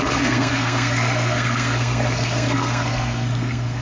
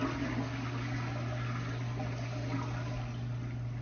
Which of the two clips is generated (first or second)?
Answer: first